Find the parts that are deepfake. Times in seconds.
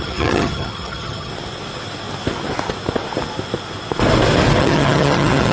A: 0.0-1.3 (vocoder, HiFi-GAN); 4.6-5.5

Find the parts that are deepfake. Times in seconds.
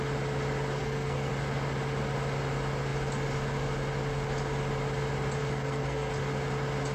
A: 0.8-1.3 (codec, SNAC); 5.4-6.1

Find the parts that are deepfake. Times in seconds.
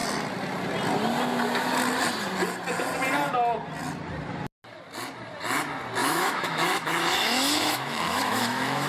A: 6.0-8.9 (autoencoder, DAC-VAE)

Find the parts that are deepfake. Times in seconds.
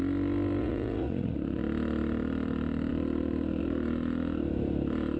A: 0.6-1.6 (vocoder, Vocos)